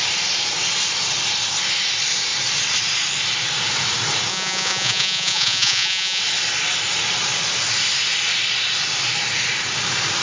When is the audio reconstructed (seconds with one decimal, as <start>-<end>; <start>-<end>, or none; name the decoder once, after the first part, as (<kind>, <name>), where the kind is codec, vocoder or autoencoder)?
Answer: 4.3-6.2 (vocoder, Vocos)